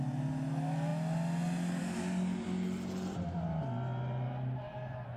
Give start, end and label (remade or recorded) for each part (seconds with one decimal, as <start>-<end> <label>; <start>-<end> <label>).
0.0-5.2 recorded